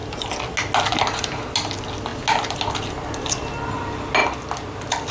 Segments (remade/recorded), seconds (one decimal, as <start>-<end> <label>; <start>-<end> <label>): 0.0-5.1 recorded